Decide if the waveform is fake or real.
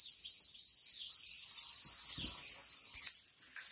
real